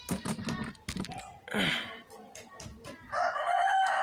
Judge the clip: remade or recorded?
recorded